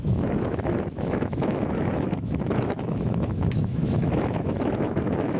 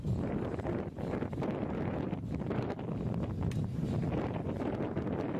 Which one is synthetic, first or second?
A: first